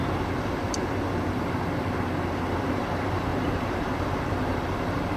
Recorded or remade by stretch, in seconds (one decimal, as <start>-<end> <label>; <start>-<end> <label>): 0.0-5.2 recorded